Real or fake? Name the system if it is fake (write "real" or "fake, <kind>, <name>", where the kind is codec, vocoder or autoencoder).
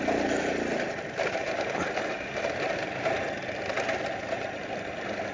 real